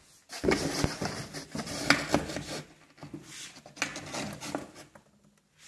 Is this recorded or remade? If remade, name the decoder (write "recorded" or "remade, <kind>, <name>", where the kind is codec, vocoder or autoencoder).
recorded